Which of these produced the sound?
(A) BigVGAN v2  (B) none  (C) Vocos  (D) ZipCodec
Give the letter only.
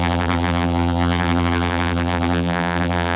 A